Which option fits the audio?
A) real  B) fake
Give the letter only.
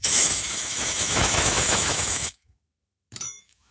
B